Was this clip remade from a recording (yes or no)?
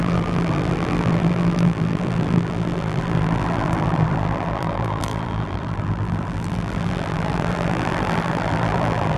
yes